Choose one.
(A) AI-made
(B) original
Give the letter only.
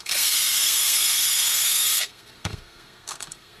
A